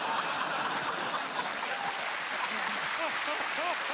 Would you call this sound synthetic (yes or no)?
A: no